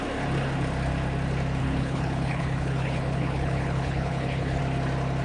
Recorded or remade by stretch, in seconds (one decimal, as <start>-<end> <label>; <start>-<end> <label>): 0.0-1.6 recorded; 1.6-4.6 remade; 4.6-5.2 recorded